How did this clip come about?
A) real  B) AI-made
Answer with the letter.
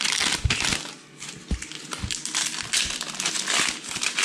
A